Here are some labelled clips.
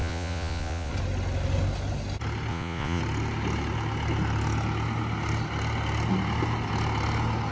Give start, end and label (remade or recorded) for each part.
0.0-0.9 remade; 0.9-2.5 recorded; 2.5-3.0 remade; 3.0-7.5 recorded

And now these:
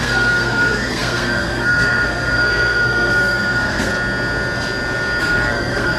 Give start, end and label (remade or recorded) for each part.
0.0-3.9 remade; 3.9-5.2 recorded; 5.2-6.0 remade